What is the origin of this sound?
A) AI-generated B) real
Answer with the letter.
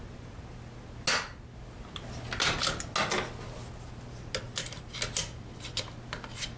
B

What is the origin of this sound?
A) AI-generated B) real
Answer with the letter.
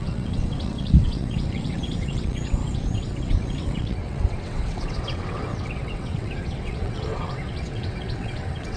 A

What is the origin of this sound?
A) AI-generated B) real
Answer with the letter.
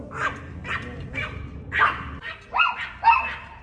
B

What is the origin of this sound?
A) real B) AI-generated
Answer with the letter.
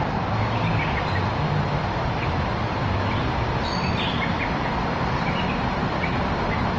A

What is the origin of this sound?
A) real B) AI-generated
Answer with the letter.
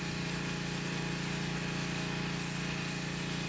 A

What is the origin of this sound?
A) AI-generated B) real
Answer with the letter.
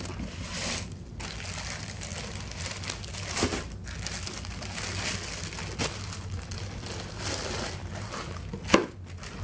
B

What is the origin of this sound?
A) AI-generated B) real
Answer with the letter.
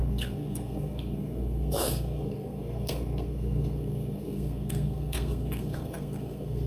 A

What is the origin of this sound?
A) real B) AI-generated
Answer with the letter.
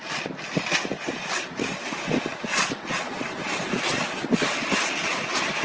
A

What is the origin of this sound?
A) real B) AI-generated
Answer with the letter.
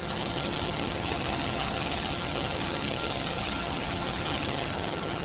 B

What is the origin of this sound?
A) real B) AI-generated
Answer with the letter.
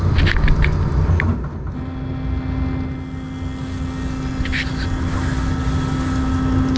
A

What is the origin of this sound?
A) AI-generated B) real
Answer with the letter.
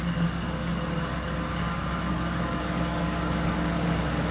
A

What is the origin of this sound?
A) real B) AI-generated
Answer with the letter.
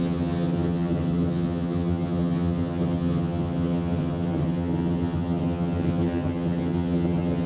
B